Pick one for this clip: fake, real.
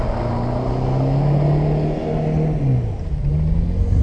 real